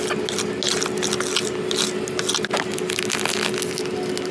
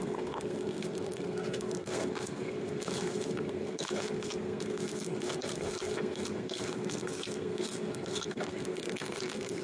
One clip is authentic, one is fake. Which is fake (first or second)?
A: second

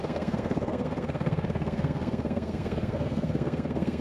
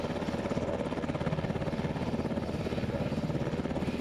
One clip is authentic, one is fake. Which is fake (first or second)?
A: first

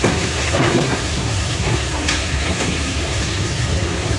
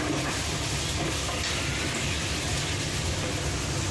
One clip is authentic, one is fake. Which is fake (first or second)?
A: first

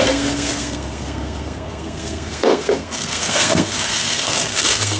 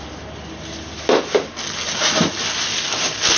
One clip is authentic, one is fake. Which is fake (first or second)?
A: first